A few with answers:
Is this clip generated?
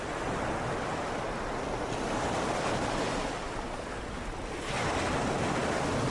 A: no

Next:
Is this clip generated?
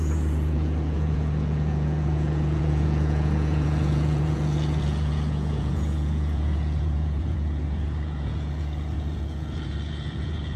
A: yes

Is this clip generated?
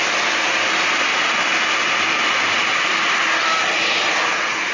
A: no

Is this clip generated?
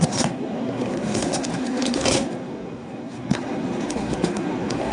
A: yes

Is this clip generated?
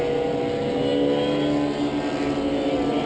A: no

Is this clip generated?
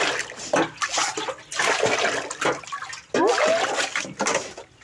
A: no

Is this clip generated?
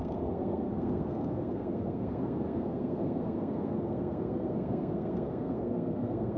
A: yes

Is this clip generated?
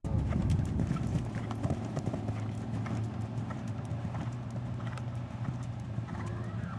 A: yes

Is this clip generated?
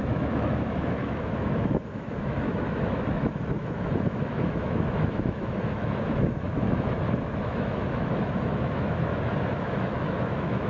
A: yes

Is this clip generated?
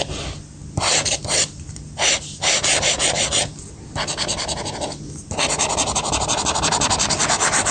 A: no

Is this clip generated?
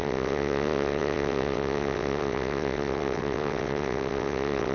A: yes